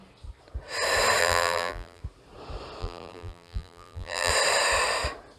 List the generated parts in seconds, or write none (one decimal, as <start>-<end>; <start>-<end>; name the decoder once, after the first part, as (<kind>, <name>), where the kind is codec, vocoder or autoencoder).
1.2-2.0 (vocoder, BigVGAN v2); 2.8-4.3